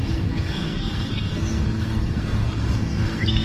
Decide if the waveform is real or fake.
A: fake